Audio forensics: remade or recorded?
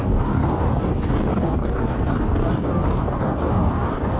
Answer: remade